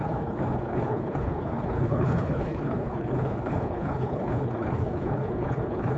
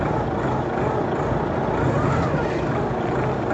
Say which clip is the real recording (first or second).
second